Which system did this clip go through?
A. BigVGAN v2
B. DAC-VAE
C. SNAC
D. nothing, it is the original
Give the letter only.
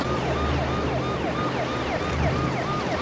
D